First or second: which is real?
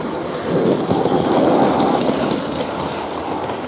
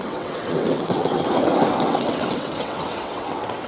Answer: first